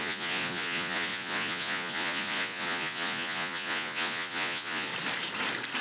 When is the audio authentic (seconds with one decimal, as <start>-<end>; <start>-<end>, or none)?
4.9-5.8